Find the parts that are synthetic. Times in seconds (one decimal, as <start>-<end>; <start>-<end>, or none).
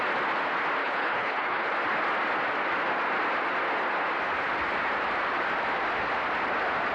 0.8-1.7